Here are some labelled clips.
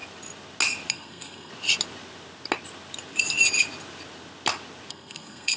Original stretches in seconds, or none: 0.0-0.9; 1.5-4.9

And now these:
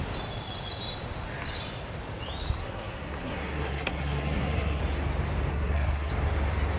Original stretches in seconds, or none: 0.0-2.6; 4.8-5.5; 6.1-6.8

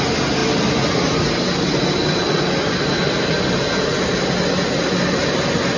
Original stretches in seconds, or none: 0.0-5.8

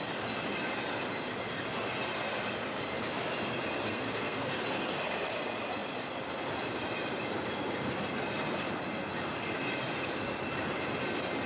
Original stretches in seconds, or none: 0.0-3.9; 4.5-11.5

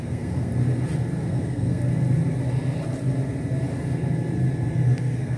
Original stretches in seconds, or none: 0.5-1.2; 1.8-5.0

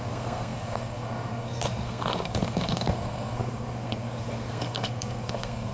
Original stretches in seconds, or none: none

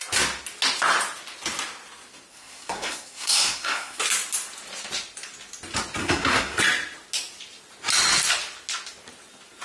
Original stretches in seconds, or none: 0.0-2.3; 4.0-6.0; 6.6-9.6

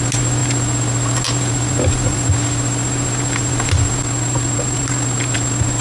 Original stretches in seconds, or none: 0.0-5.8